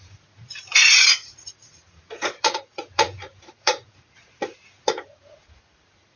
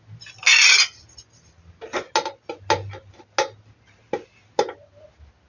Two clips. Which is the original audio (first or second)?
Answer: second